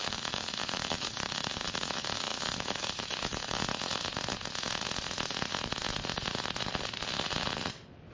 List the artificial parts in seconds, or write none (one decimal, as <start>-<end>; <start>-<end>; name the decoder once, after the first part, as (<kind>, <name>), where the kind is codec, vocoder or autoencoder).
0.0-3.7 (autoencoder, DAC-VAE)